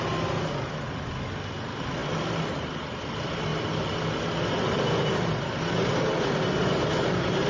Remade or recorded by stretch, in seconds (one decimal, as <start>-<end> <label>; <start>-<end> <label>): 0.0-7.5 recorded